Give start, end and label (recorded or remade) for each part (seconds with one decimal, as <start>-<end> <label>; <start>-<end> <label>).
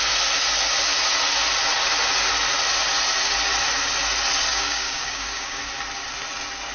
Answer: 0.0-4.5 recorded; 4.5-5.6 remade; 5.6-6.7 recorded